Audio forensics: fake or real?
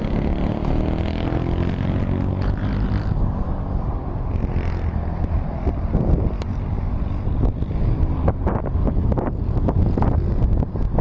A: real